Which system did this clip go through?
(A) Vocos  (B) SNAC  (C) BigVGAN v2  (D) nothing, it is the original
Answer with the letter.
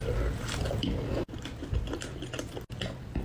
D